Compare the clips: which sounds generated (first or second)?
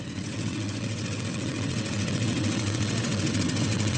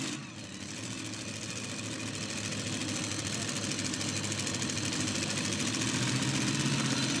first